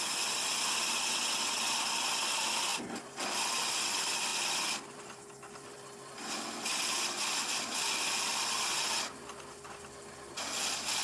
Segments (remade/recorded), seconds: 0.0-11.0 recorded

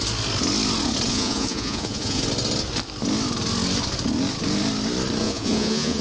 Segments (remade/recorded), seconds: 0.0-1.1 recorded; 1.1-2.2 remade; 2.2-5.2 recorded; 5.2-6.0 remade

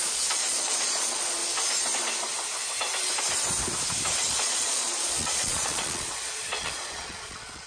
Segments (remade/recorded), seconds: 0.0-1.4 remade; 1.4-4.3 recorded; 4.3-7.7 remade

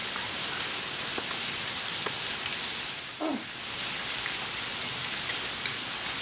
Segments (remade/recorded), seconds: 0.0-3.7 remade; 3.7-6.2 recorded